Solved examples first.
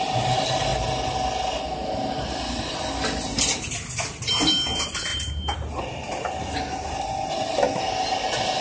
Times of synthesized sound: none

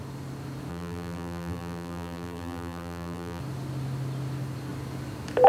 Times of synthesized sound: 0.7-3.4 (vocoder, BigVGAN v2)

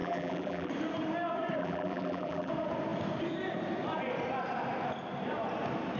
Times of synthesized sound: 0.0-0.7 (vocoder, BigVGAN v2); 1.6-2.5

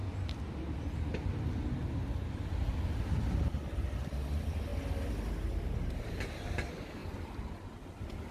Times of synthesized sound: 7.0-7.6 (vocoder, BigVGAN v2)